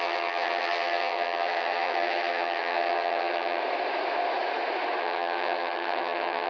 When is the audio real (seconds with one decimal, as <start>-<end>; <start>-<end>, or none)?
3.6-5.0